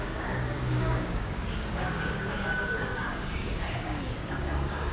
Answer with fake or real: fake